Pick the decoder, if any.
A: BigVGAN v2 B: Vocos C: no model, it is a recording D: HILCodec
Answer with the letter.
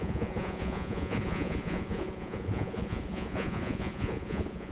B